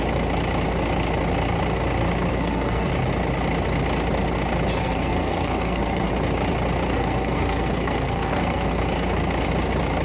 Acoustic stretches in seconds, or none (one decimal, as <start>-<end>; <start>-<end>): 0.0-2.3; 2.9-4.8; 6.1-6.9; 8.8-10.0